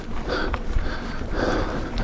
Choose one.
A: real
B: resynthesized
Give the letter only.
B